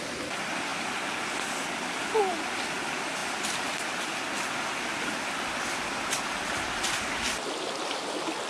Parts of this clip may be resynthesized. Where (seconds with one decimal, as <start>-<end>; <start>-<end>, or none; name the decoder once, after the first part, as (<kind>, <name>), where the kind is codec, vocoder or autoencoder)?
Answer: none